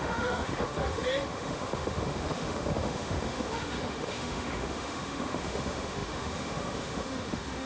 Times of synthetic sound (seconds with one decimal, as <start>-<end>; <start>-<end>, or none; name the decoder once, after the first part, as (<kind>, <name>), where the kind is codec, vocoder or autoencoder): 0.0-7.7 (autoencoder, DAC-VAE)